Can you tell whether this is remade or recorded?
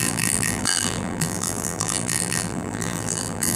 remade